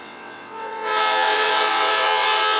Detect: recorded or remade remade